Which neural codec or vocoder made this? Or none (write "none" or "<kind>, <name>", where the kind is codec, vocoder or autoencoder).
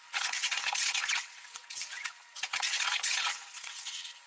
vocoder, WaveNeXt